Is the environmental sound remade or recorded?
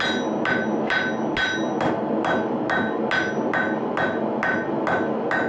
recorded